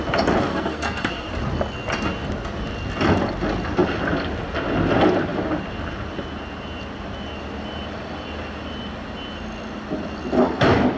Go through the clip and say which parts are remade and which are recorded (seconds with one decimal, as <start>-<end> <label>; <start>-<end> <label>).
0.0-0.5 recorded; 0.5-1.3 remade; 1.3-11.0 recorded